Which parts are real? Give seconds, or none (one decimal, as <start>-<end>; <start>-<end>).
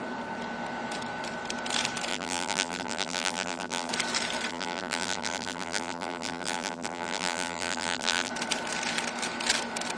0.0-2.1; 3.9-4.5; 8.3-10.0